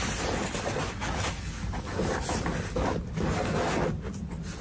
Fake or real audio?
real